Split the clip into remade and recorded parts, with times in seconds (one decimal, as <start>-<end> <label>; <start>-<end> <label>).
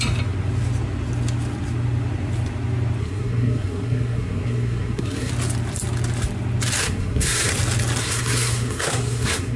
0.0-3.0 recorded; 3.0-5.3 remade; 5.3-6.8 recorded; 6.8-7.5 remade; 7.5-8.0 recorded; 8.0-9.6 remade